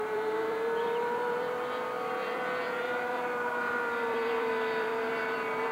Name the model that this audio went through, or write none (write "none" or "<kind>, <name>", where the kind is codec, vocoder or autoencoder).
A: vocoder, BigVGAN v2